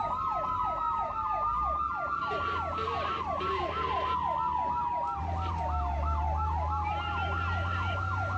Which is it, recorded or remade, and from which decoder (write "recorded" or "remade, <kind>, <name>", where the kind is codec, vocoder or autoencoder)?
recorded